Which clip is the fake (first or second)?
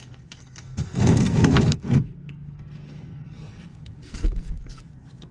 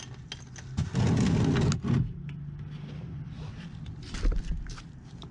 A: first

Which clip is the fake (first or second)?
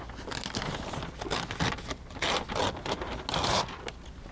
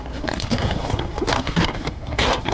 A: second